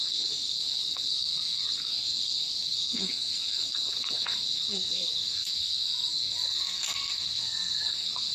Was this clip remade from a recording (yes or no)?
yes